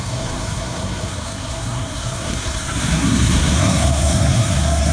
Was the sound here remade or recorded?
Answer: remade